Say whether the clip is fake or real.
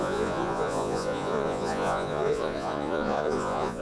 fake